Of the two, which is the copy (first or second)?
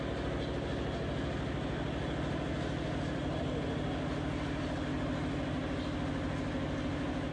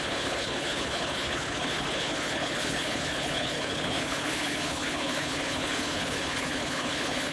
second